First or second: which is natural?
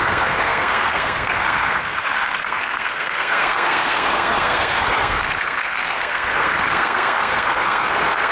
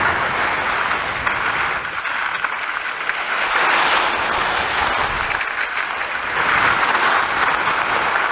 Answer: second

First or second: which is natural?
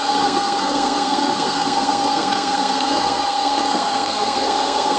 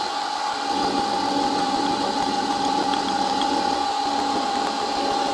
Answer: second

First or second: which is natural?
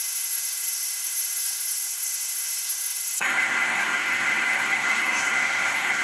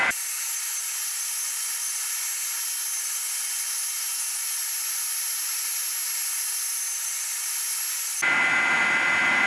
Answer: second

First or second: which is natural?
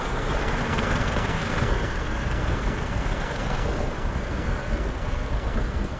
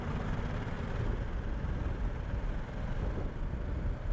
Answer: second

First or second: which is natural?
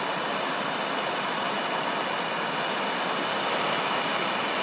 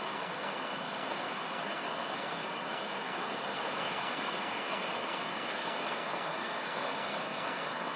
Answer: first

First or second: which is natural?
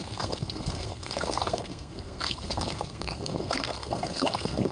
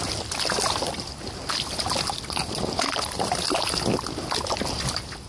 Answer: second